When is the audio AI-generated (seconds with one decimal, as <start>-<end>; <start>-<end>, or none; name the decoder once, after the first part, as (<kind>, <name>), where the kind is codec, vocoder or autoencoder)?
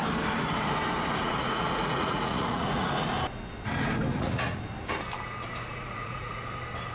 1.2-2.9 (vocoder, Vocos); 4.1-4.6; 5.7-6.4